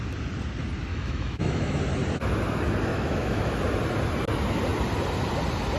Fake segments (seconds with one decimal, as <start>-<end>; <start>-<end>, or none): 0.9-1.8; 2.9-3.5